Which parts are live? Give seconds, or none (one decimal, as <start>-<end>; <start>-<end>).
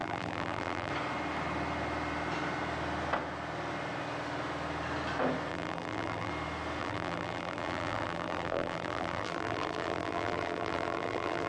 0.9-5.5; 6.3-6.8